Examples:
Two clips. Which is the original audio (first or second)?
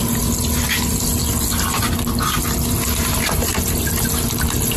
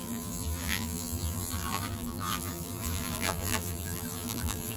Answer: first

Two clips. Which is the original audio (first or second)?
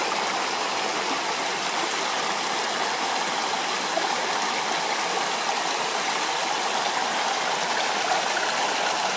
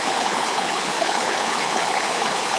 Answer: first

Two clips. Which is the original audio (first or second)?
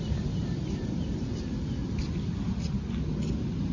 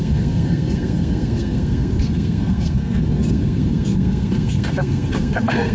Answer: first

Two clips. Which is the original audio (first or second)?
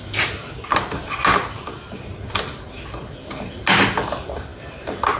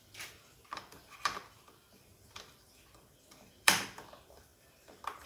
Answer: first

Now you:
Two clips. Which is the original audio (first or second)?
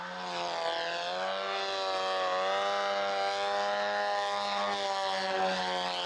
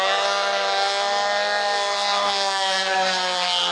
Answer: first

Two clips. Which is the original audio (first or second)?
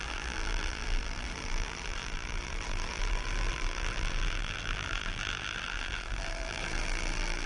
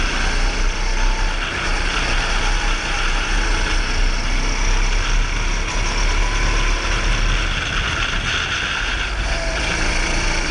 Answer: second